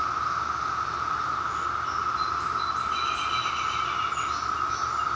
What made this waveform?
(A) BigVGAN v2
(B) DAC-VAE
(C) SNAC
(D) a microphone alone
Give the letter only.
D